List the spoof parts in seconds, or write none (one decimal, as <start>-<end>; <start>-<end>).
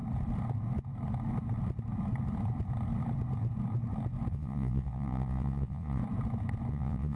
4.3-6.0; 6.7-7.2